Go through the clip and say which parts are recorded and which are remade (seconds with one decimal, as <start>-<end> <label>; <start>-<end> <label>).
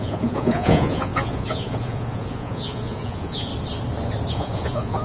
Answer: 0.0-3.5 remade; 3.5-4.3 recorded; 4.3-5.0 remade